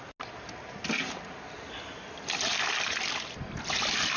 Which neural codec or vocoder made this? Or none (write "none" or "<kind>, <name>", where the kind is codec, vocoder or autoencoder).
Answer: none